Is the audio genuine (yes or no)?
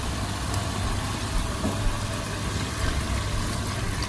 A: yes